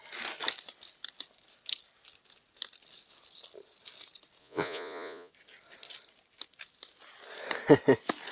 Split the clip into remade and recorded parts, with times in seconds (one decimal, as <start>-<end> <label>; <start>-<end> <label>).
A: 0.0-4.4 recorded; 4.4-5.3 remade; 5.3-8.3 recorded